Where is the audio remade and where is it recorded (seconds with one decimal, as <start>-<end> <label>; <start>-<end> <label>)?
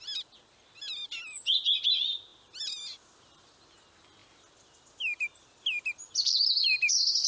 0.0-7.3 recorded